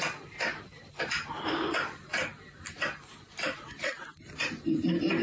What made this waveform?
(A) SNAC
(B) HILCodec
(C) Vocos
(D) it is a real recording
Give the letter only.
D